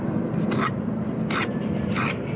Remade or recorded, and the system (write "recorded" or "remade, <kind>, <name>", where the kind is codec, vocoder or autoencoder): recorded